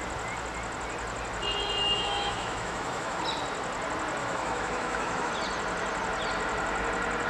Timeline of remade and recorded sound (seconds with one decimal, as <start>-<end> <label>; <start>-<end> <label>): 0.0-1.8 recorded; 1.8-3.2 remade; 3.2-4.2 recorded; 4.2-5.3 remade; 5.3-7.3 recorded

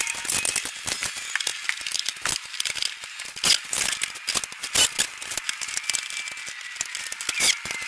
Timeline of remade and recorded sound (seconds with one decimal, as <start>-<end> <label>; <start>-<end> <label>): 0.0-7.9 recorded

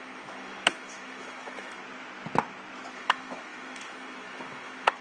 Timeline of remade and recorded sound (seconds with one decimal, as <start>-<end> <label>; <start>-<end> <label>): 0.0-1.8 remade; 1.8-2.9 recorded; 2.9-5.0 remade

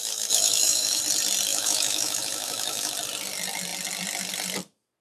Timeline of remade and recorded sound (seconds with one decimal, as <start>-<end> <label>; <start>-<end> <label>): 0.0-1.0 remade; 1.0-1.5 recorded; 1.5-2.9 remade; 2.9-5.0 recorded

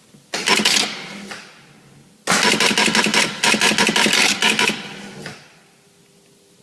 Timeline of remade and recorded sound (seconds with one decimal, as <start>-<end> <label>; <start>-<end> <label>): 0.0-6.6 recorded

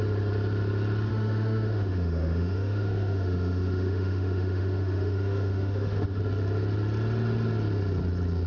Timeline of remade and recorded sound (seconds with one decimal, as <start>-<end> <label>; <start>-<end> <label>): 0.0-1.1 recorded; 1.1-6.2 remade; 6.2-8.5 recorded

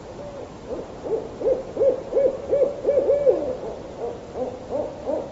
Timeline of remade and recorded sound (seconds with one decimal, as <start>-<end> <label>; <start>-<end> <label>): 0.0-5.3 recorded

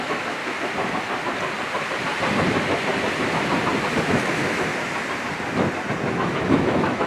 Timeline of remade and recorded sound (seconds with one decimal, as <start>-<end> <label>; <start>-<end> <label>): 0.0-0.4 remade; 0.4-4.0 recorded; 4.0-4.7 remade; 4.7-6.1 recorded; 6.1-7.1 remade